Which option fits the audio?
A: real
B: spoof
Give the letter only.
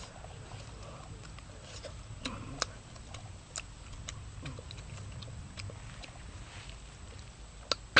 A